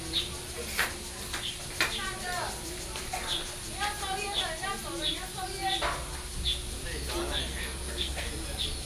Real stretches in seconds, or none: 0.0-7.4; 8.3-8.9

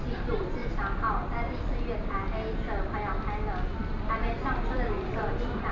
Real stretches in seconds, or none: 0.0-3.8; 5.3-5.7